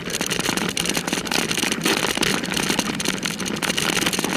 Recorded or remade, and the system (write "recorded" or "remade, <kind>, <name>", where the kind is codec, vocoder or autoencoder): recorded